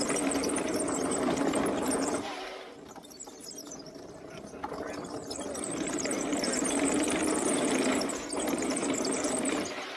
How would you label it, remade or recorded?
remade